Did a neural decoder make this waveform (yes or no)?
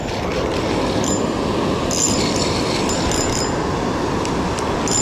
no